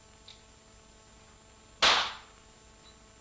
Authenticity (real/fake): real